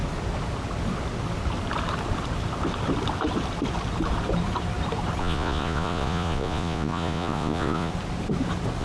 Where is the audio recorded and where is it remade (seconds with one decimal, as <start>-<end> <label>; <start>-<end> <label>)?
0.0-5.2 recorded; 5.2-7.9 remade; 7.9-8.8 recorded